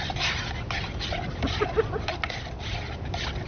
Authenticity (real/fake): real